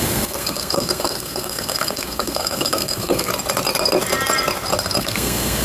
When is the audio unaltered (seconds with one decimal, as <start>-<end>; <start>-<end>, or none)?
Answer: 3.3-5.0